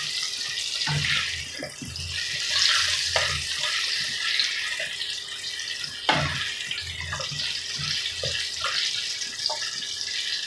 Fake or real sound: real